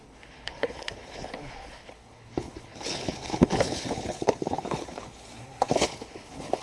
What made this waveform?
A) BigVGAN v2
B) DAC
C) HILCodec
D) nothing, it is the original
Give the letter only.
C